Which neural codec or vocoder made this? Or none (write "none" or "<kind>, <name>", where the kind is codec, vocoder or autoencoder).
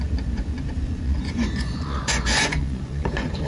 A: vocoder, Vocos